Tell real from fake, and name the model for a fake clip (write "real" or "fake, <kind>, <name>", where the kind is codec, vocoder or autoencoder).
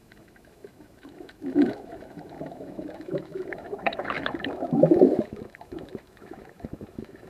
fake, autoencoder, DAC-VAE